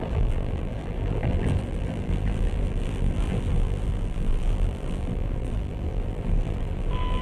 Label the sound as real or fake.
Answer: fake